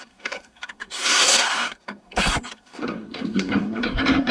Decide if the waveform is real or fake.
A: fake